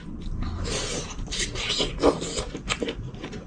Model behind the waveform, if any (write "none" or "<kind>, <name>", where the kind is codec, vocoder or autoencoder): none